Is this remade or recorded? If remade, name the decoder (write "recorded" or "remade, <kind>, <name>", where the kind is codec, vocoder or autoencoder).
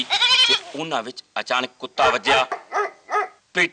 recorded